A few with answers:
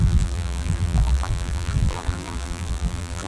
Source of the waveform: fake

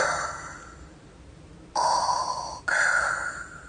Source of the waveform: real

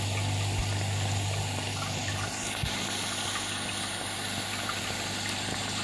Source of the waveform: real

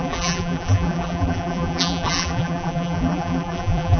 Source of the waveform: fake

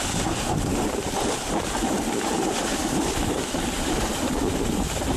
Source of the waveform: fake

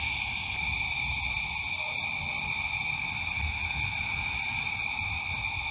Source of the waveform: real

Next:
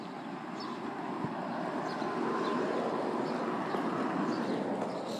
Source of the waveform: real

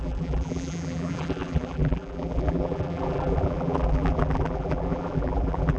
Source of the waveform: fake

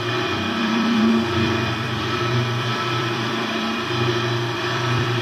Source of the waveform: fake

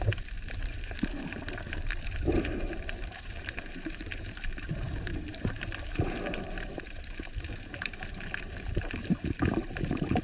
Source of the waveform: fake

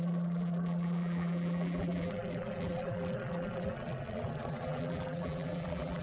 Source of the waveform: fake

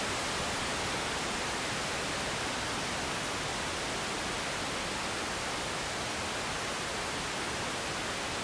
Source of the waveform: real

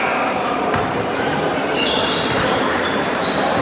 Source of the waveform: fake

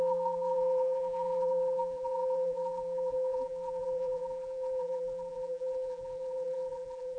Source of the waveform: fake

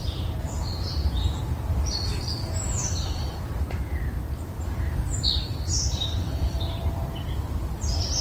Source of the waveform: fake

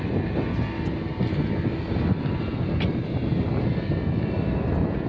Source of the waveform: real